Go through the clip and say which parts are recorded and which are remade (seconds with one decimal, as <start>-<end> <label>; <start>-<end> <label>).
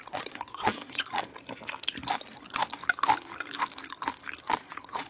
0.0-1.3 remade; 1.3-4.4 recorded; 4.4-5.1 remade